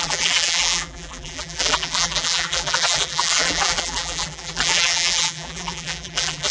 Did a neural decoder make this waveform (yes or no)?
yes